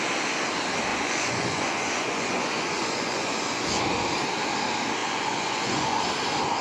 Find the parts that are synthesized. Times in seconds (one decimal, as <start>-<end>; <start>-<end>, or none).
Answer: 0.9-3.8; 5.0-6.0